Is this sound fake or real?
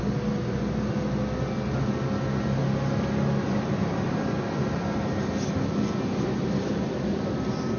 real